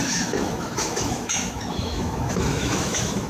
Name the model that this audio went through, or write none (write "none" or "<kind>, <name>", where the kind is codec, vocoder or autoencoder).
autoencoder, DAC-VAE